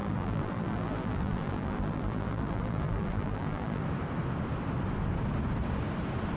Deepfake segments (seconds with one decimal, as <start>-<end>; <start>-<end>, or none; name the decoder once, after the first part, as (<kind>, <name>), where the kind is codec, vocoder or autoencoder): 0.0-3.8 (vocoder, BigVGAN v2)